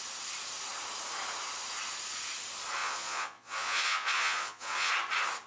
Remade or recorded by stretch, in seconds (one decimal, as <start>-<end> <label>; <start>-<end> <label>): 0.0-2.8 recorded; 2.8-4.9 remade; 4.9-5.5 recorded